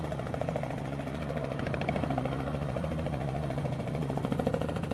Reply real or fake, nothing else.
fake